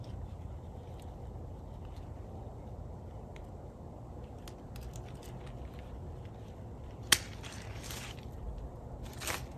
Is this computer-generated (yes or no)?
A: no